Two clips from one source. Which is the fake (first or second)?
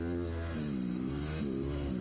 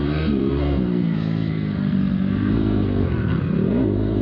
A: second